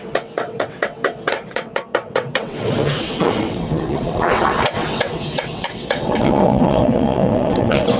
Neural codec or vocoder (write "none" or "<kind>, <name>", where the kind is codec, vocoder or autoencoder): vocoder, WaveNeXt